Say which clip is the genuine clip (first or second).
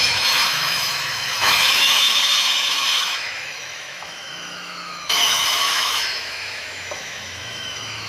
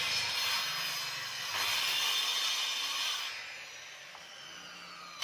second